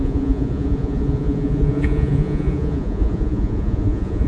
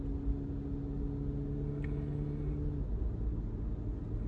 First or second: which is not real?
first